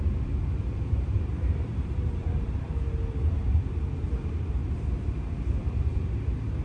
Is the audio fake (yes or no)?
yes